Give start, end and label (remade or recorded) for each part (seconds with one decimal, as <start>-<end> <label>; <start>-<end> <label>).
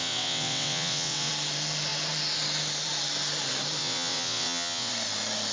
0.0-1.3 remade; 1.3-3.8 recorded; 3.8-4.9 remade; 4.9-5.5 recorded